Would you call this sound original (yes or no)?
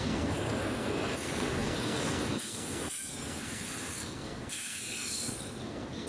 no